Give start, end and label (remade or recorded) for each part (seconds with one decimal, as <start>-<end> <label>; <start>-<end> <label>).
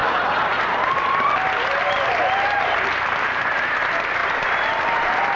0.0-5.4 recorded